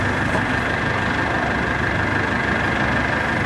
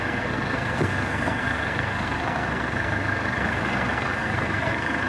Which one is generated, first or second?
second